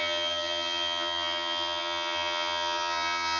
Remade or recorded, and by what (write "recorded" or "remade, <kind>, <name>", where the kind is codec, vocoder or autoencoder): remade, vocoder, HiFi-GAN